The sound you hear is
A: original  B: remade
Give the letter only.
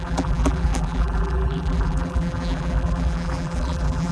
B